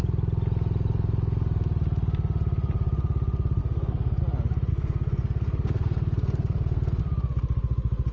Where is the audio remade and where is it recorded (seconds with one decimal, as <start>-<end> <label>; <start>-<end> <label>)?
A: 0.0-3.6 recorded; 3.6-4.2 remade; 4.2-4.7 recorded; 4.7-7.0 remade; 7.0-8.1 recorded